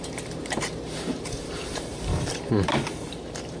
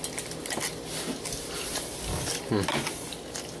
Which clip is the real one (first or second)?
second